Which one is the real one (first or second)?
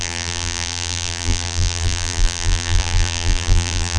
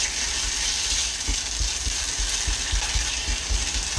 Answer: second